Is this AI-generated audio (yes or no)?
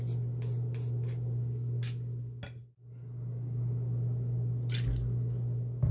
no